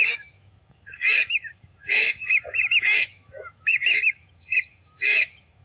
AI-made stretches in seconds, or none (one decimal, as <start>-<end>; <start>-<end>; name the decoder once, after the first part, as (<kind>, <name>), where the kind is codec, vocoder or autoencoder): 0.0-5.6 (autoencoder, DAC-VAE)